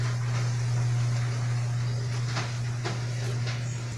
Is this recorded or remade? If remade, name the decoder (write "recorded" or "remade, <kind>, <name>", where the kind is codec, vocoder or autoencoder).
recorded